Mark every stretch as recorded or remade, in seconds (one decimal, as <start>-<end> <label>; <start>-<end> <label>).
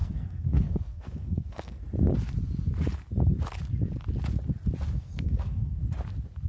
0.0-1.8 remade; 1.8-4.9 recorded; 4.9-5.8 remade; 5.8-6.5 recorded